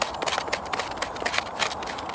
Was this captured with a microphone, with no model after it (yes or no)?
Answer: yes